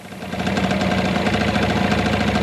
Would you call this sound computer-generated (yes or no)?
no